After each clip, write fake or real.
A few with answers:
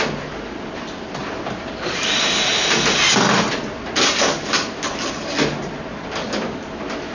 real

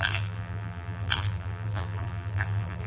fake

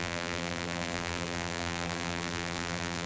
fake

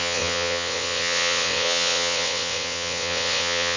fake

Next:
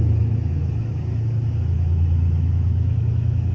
fake